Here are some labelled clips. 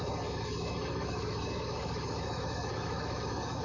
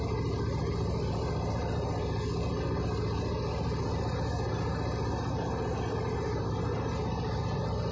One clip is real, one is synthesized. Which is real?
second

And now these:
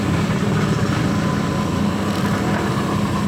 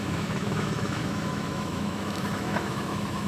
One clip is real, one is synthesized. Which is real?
first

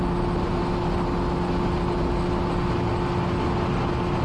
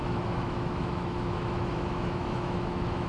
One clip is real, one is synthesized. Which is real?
first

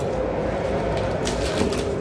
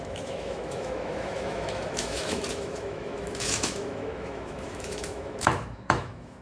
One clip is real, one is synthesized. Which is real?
first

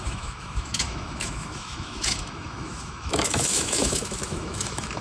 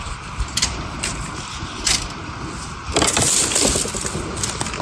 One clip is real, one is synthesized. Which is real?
second